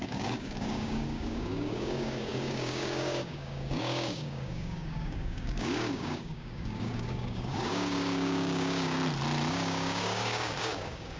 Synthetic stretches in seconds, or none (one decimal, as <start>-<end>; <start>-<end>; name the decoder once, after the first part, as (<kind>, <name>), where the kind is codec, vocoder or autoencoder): 0.0-9.0 (codec, DAC); 9.5-11.2